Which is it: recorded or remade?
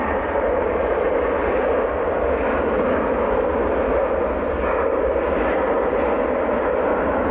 recorded